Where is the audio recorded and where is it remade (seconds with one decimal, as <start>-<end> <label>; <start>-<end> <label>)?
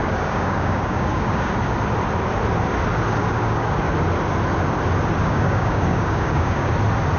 0.0-1.5 remade; 1.5-3.2 recorded; 3.2-3.7 remade; 3.7-5.2 recorded; 5.2-6.7 remade; 6.7-7.2 recorded